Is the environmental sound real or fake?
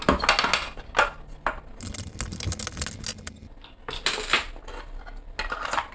real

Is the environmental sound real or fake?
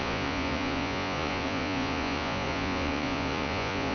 fake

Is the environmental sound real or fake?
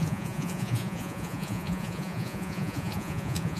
fake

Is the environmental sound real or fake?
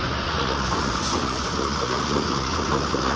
fake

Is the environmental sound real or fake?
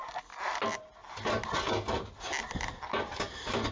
real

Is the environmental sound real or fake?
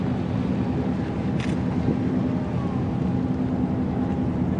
real